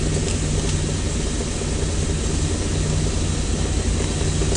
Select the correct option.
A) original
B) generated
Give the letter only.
A